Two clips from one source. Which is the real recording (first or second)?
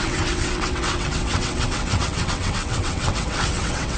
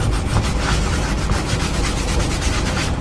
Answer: second